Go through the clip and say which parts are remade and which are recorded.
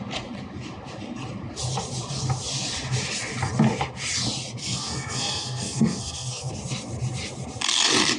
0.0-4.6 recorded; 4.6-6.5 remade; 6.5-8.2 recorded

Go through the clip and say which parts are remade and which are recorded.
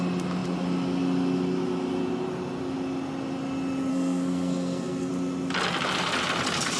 0.0-3.9 recorded; 3.9-5.1 remade; 5.1-6.8 recorded